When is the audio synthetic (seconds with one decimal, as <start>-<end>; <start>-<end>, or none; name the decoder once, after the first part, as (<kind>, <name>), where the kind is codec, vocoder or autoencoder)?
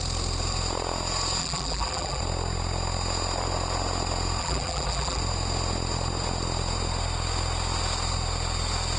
1.4-2.2 (vocoder, BigVGAN v2); 4.4-5.2